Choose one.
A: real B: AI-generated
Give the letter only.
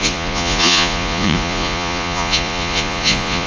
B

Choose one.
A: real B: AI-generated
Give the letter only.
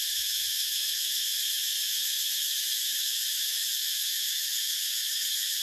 B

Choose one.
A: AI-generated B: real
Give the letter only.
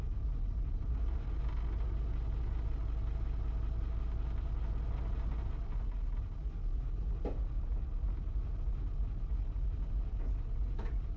B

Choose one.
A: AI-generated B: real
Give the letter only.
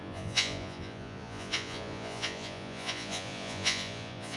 A